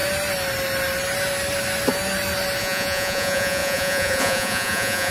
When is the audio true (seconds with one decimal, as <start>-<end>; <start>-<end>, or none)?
0.0-2.6